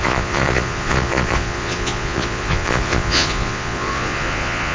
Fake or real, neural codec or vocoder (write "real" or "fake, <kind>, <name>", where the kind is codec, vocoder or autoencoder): fake, vocoder, Vocos